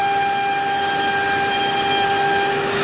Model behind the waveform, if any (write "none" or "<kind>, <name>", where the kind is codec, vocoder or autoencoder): none